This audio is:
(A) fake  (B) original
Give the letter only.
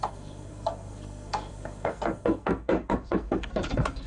A